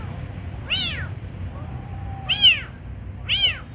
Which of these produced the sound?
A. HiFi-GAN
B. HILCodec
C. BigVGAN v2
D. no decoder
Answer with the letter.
D